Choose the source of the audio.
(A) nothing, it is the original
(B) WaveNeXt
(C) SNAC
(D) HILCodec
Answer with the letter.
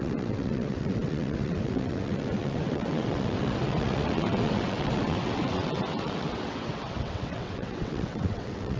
B